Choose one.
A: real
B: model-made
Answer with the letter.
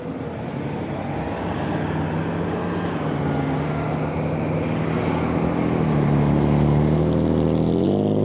A